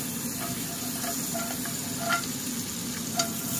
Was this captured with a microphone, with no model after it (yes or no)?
yes